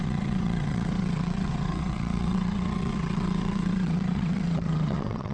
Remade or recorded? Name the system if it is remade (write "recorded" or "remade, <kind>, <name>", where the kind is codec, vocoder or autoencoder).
remade, vocoder, WaveNeXt